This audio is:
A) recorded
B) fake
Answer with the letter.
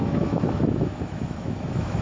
B